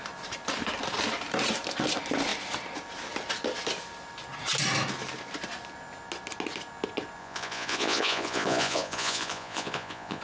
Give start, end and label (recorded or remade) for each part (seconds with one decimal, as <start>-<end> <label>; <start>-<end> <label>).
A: 0.0-7.2 recorded; 7.2-10.2 remade